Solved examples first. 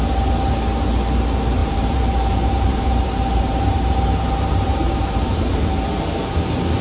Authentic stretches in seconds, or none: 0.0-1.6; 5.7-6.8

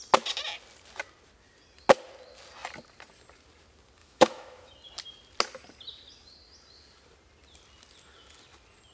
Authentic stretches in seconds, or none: 0.0-4.0; 4.7-8.9

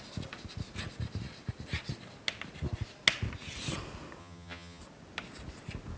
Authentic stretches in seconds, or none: 0.0-4.2; 4.8-6.0

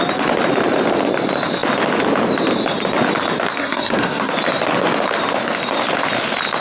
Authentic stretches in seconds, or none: 0.0-3.6; 4.3-6.6